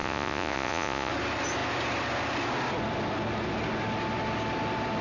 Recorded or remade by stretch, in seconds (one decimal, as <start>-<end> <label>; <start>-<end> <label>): 0.0-1.1 remade; 1.1-5.0 recorded